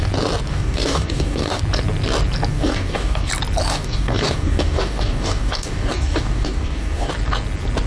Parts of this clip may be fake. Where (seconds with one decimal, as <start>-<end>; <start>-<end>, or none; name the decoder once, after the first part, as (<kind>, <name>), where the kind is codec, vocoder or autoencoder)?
0.5-1.6 (codec, DAC); 2.5-3.3; 3.7-7.1